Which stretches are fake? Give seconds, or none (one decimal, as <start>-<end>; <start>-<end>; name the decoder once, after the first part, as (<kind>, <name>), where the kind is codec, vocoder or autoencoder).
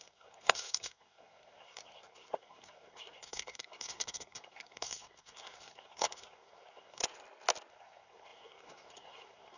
0.0-7.0 (codec, SNAC); 7.7-9.6